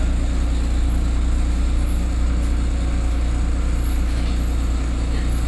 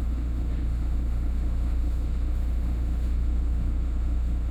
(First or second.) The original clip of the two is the first